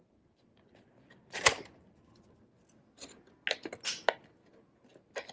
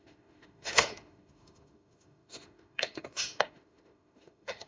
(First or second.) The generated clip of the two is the second